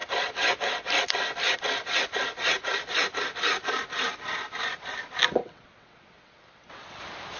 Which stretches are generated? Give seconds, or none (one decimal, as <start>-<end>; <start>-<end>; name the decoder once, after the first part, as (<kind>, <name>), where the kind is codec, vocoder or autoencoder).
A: 5.4-7.0 (vocoder, WaveNeXt)